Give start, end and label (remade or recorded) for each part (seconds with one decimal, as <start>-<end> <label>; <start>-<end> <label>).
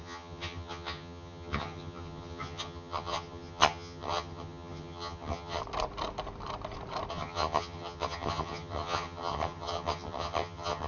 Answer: 0.0-5.6 remade; 5.6-7.1 recorded; 7.1-10.9 remade